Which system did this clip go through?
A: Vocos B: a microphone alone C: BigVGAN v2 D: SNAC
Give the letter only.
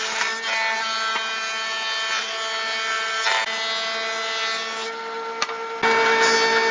B